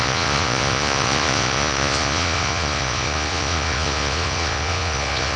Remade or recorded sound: remade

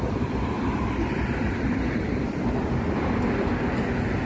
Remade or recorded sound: recorded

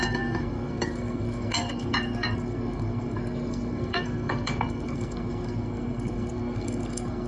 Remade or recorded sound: remade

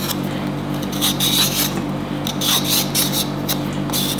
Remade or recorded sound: recorded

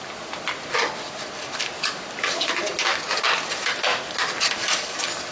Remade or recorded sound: recorded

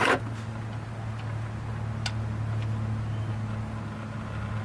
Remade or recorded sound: recorded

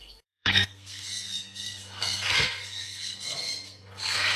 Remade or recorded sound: remade